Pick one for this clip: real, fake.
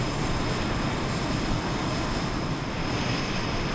real